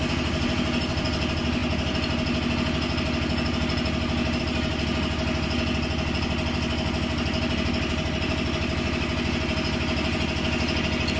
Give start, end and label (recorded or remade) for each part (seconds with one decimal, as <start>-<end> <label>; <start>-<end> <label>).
0.0-11.2 recorded